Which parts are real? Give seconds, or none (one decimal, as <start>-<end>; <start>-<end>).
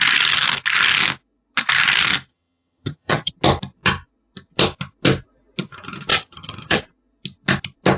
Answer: 0.0-2.3; 3.3-6.1; 6.8-8.0